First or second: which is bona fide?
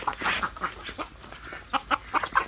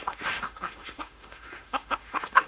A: first